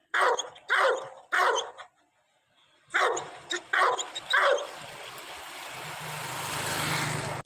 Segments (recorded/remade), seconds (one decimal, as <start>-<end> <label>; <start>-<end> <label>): 0.0-3.8 recorded; 3.8-5.1 remade; 5.1-7.5 recorded